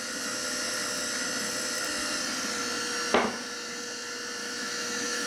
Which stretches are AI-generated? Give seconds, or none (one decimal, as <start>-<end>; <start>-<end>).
4.4-5.3